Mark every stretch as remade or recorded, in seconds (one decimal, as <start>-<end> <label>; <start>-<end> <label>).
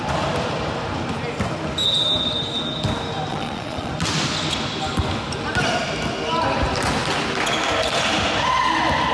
0.0-3.3 recorded; 3.3-3.9 remade; 3.9-9.1 recorded